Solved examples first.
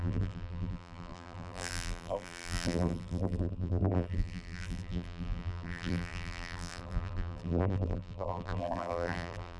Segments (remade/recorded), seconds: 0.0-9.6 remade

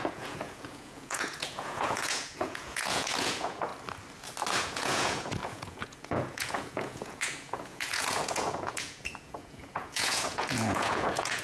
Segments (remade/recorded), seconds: 0.0-3.7 remade; 3.7-4.6 recorded; 4.6-11.4 remade

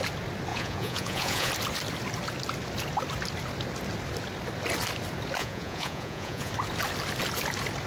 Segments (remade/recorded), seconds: 0.0-0.5 recorded; 0.5-1.5 remade; 1.5-5.4 recorded; 5.4-6.5 remade; 6.5-7.9 recorded

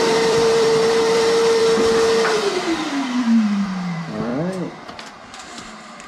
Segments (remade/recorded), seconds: 0.0-1.6 remade; 1.6-2.8 recorded; 2.8-4.3 remade; 4.3-6.1 recorded